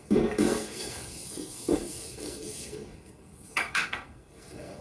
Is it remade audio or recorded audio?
remade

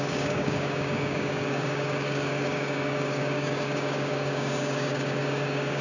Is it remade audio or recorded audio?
remade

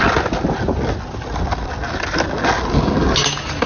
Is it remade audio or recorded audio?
recorded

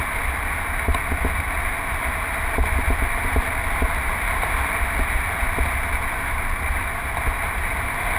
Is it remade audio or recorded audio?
recorded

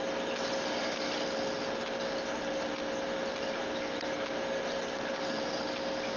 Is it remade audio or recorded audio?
recorded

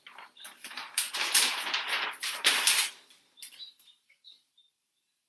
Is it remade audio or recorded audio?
remade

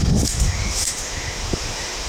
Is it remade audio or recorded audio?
remade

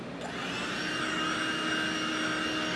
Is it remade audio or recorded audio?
recorded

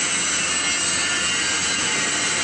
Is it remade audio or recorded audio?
recorded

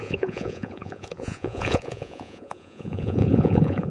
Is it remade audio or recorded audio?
remade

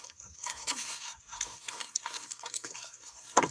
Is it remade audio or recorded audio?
remade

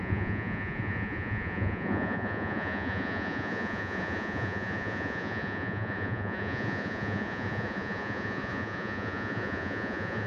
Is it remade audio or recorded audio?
remade